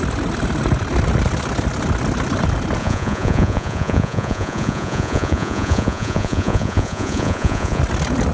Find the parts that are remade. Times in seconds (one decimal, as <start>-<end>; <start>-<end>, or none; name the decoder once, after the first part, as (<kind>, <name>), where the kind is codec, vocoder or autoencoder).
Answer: 2.8-7.8 (vocoder, Vocos)